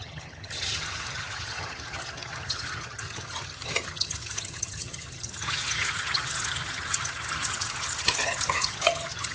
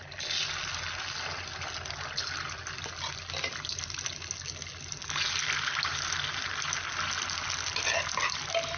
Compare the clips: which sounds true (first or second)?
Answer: second